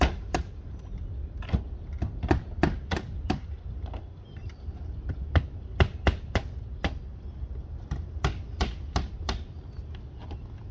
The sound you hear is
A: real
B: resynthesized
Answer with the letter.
A